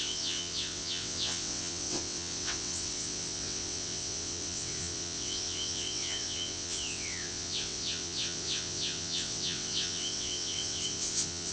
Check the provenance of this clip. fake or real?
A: fake